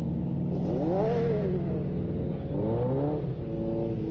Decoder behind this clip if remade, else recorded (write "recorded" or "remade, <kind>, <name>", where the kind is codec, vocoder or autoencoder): recorded